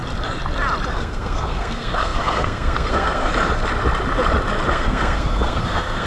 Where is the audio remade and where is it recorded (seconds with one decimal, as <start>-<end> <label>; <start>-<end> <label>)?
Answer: 0.0-0.9 recorded; 0.9-3.3 remade; 3.3-4.7 recorded; 4.7-6.1 remade

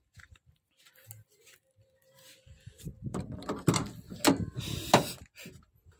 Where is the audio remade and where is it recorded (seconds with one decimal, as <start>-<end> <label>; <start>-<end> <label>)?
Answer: 0.0-6.0 recorded

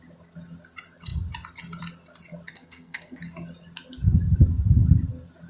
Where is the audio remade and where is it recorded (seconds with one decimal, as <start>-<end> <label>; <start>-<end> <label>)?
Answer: 0.0-2.5 recorded; 2.5-3.2 remade; 3.2-5.5 recorded

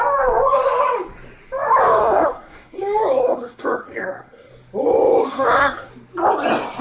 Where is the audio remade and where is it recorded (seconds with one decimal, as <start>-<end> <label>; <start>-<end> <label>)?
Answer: 0.0-2.0 recorded; 2.0-2.8 remade; 2.8-3.2 recorded; 3.2-4.5 remade; 4.5-5.3 recorded; 5.3-5.9 remade; 5.9-6.8 recorded

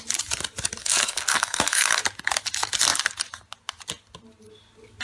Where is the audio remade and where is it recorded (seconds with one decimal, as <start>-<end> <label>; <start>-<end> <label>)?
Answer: 0.0-0.8 recorded; 0.8-2.0 remade; 2.0-5.0 recorded